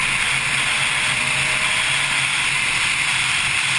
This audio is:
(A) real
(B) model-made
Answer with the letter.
A